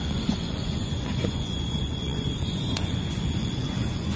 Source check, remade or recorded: remade